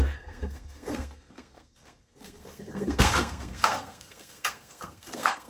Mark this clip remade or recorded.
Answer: remade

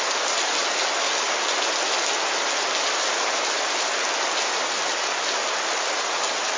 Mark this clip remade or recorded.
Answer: recorded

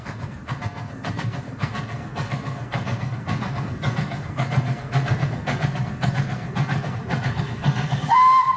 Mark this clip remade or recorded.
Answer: remade